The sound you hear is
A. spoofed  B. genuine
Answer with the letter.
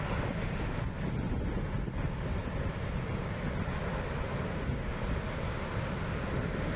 B